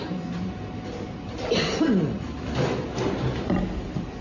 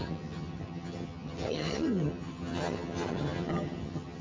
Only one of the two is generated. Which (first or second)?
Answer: second